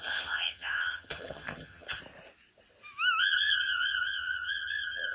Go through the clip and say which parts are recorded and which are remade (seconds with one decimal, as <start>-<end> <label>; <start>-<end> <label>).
0.0-2.0 remade; 2.0-3.2 recorded; 3.2-5.1 remade

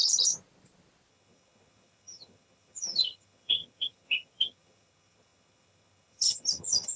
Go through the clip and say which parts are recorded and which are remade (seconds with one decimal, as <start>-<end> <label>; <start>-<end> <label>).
0.0-1.1 recorded; 1.1-7.0 remade

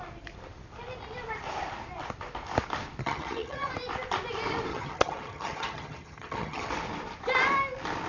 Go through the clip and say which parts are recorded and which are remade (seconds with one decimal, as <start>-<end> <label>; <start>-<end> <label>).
0.0-3.0 recorded; 3.0-3.7 remade; 3.7-4.7 recorded; 4.7-6.7 remade; 6.7-8.1 recorded